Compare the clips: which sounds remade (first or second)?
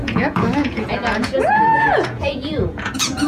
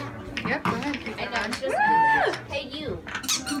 first